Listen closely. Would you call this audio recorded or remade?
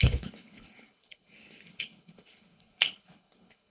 remade